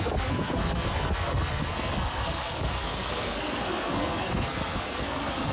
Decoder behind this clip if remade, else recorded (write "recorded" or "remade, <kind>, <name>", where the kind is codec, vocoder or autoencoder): remade, codec, SNAC